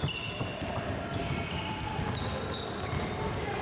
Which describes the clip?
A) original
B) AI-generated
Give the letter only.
A